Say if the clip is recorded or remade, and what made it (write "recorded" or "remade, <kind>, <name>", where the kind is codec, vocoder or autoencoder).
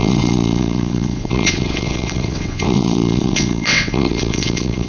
remade, vocoder, WaveNeXt